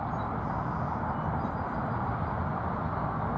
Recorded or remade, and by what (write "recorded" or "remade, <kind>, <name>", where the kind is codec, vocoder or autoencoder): recorded